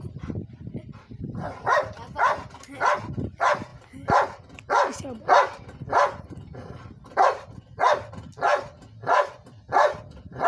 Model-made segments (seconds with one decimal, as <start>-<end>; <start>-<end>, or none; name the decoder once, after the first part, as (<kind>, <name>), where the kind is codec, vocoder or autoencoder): none